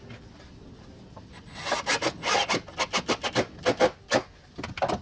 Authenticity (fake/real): real